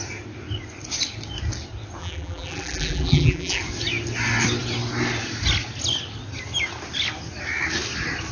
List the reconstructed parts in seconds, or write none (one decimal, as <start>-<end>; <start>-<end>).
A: 2.0-3.6